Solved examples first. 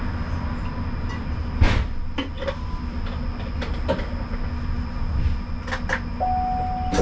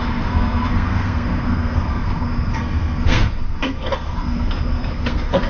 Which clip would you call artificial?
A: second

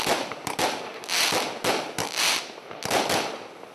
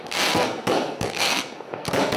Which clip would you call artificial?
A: second